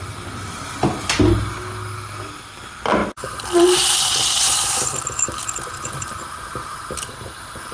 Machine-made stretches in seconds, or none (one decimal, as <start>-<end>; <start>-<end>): none